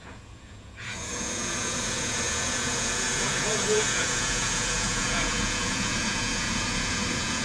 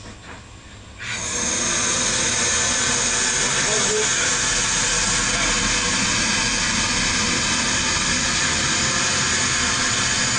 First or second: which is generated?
first